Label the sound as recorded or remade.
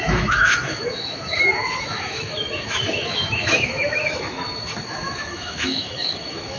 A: remade